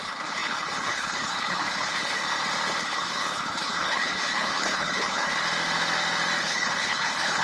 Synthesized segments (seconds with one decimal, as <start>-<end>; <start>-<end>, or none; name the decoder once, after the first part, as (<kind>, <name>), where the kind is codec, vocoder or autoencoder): 0.0-2.2 (codec, HILCodec); 2.8-5.3; 6.4-7.4